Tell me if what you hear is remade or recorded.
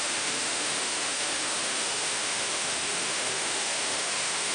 remade